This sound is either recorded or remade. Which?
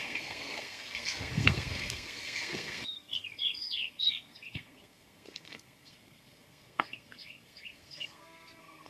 remade